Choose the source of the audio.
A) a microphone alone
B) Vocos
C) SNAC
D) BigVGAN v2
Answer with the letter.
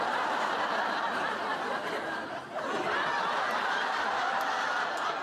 A